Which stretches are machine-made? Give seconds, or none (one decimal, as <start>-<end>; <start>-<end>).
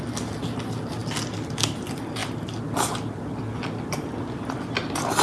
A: none